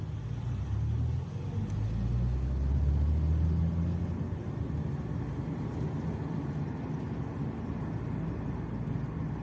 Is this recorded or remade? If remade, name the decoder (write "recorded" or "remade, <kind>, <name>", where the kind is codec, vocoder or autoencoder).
recorded